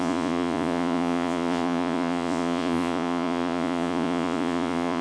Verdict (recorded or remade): remade